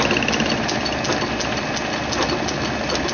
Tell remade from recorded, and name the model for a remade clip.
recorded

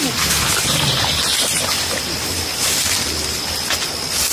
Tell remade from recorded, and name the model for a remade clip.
recorded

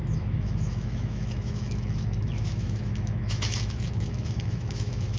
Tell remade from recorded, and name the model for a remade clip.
remade, autoencoder, DAC-VAE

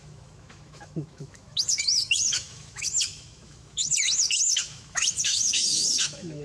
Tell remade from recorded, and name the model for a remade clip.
remade, autoencoder, DAC-VAE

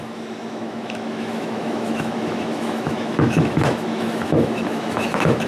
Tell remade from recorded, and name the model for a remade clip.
remade, autoencoder, DAC-VAE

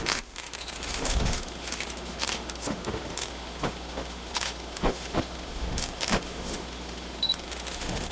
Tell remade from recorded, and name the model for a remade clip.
remade, autoencoder, DAC-VAE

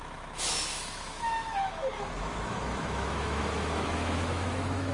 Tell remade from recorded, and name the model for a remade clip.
remade, autoencoder, DAC-VAE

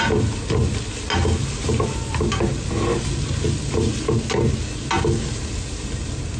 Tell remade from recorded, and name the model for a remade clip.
recorded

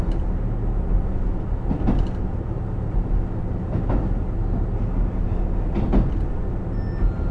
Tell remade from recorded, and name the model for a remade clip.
recorded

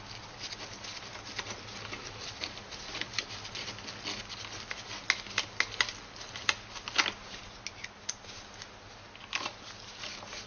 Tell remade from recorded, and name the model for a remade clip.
recorded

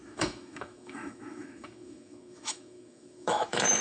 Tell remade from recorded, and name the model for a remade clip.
remade, autoencoder, DAC-VAE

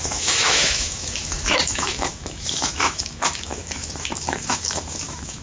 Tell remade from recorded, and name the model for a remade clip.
remade, autoencoder, DAC-VAE